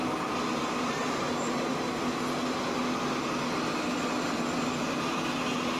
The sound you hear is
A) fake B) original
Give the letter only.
B